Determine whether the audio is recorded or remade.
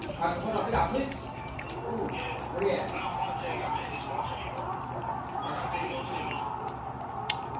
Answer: recorded